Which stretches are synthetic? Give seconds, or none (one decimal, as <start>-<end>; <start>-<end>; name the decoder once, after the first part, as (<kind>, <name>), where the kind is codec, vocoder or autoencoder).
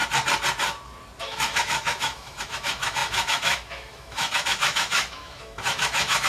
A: 1.2-6.3 (autoencoder, DAC-VAE)